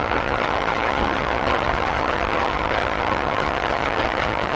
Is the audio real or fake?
fake